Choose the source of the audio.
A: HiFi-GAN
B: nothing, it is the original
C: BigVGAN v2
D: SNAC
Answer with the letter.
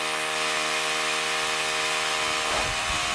B